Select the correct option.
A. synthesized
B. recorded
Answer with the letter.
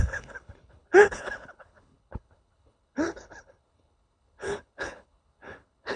A